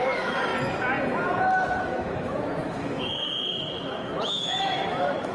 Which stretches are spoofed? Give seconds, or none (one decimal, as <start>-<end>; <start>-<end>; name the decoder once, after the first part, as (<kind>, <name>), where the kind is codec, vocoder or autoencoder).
0.0-0.5 (autoencoder, DAC-VAE); 1.8-5.3